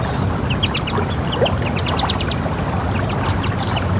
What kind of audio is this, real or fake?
real